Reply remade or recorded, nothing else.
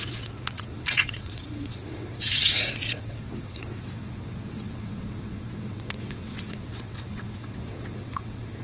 remade